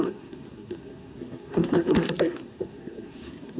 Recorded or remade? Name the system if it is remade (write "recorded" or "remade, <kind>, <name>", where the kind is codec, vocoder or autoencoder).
remade, codec, SNAC